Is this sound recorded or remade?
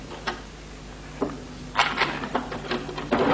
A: recorded